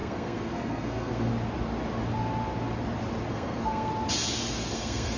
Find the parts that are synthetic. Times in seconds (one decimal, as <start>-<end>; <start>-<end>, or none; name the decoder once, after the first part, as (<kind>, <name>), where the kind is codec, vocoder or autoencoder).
0.0-1.3 (codec, SNAC); 3.3-3.9; 4.7-5.2